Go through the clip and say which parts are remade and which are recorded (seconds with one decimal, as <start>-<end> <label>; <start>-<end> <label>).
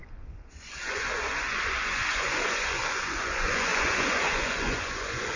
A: 0.0-5.4 remade